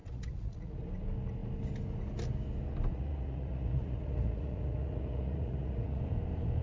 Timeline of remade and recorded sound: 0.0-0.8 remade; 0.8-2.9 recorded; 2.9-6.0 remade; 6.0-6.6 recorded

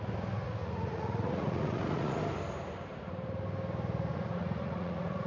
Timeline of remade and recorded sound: 0.0-0.6 recorded; 0.6-2.2 remade; 2.2-4.1 recorded; 4.1-5.3 remade

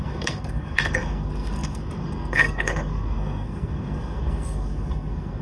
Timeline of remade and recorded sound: 0.0-5.4 remade

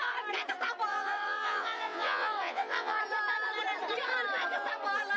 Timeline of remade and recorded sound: 0.0-0.9 recorded; 0.9-3.0 remade; 3.0-5.2 recorded